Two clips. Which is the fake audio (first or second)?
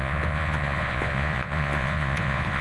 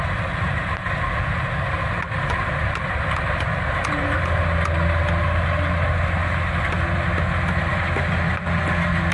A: first